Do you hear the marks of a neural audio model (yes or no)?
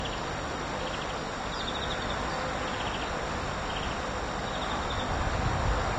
no